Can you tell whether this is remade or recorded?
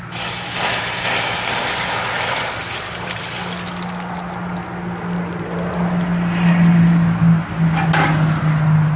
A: recorded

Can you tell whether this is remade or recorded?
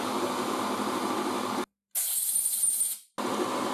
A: recorded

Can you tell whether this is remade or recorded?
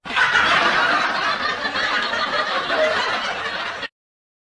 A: recorded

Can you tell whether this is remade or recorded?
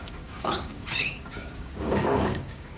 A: remade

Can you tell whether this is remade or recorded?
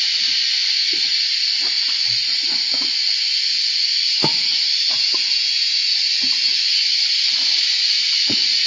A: recorded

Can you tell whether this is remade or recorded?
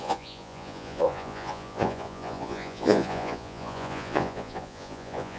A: remade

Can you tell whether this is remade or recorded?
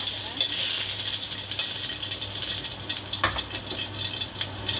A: recorded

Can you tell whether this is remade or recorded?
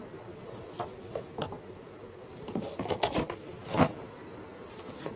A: recorded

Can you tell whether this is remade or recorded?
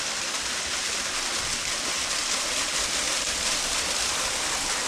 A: recorded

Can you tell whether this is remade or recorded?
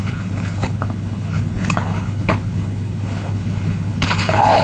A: remade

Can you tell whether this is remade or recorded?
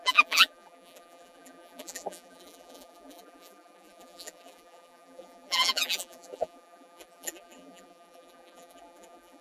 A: remade